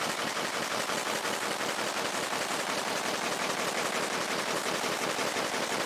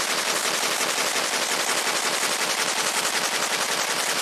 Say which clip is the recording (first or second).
second